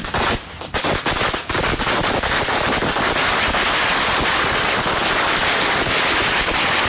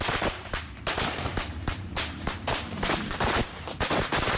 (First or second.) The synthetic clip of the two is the second